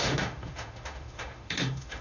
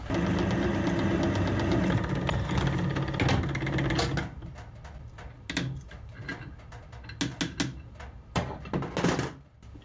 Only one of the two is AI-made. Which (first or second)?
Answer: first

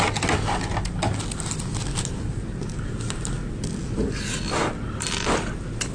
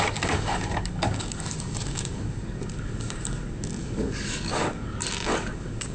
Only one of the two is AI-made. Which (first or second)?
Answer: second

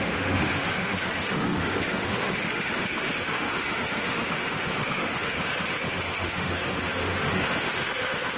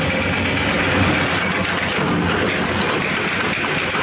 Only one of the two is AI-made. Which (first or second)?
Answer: first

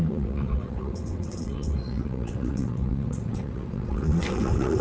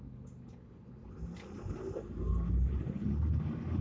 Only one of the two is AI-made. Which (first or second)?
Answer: first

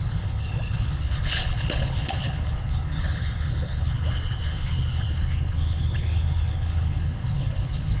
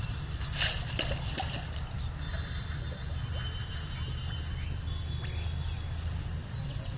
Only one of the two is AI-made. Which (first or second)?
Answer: first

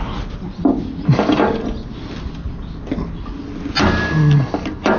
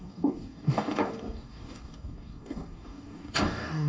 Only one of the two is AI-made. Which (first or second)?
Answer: second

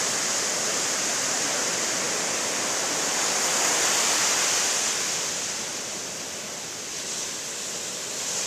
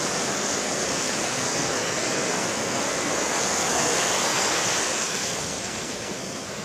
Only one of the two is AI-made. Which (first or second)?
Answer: second